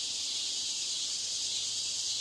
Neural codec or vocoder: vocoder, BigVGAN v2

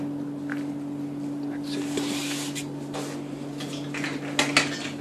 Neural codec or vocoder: none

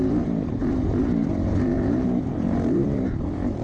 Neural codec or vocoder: vocoder, BigVGAN v2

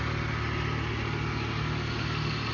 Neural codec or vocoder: none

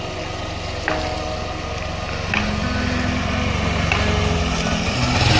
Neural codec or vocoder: none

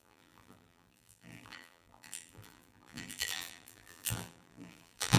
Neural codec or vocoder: vocoder, BigVGAN v2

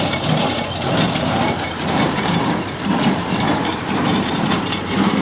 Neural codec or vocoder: vocoder, BigVGAN v2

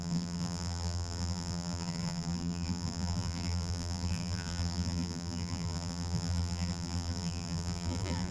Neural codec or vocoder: vocoder, BigVGAN v2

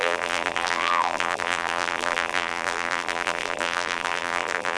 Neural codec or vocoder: vocoder, BigVGAN v2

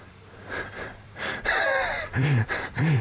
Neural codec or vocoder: vocoder, BigVGAN v2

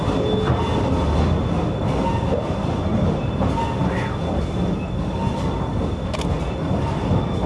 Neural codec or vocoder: none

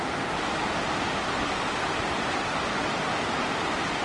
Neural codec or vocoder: none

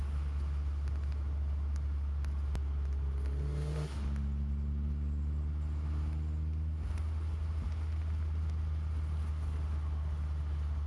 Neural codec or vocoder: none